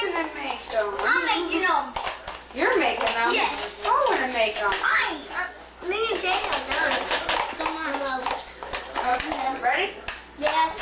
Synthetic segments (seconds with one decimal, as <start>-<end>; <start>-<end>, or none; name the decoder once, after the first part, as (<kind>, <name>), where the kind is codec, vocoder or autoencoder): none